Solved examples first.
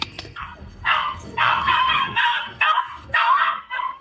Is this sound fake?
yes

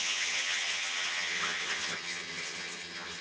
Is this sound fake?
yes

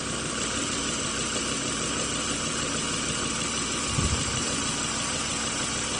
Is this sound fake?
yes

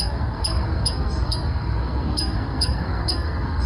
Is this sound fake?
yes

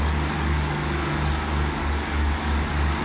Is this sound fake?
yes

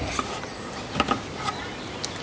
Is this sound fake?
no